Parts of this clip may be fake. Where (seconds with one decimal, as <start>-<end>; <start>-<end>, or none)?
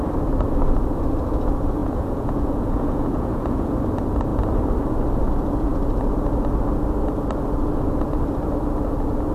1.8-3.8